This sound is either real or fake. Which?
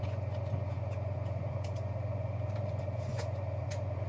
fake